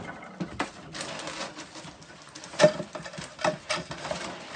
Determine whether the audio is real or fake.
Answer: real